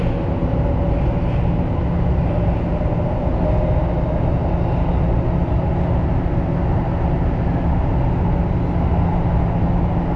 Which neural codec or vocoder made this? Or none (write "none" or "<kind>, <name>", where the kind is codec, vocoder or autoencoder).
none